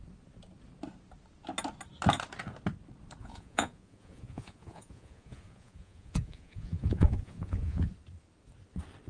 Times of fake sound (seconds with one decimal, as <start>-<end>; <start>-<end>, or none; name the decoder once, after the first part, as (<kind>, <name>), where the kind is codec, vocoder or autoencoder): 3.2-7.9 (vocoder, Vocos)